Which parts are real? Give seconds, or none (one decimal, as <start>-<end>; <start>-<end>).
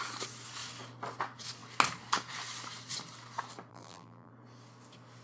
0.0-3.7; 4.3-5.2